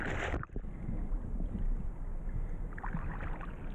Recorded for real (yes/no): yes